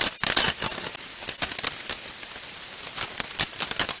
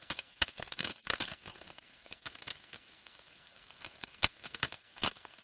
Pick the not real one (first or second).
second